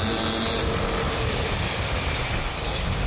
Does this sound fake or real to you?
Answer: real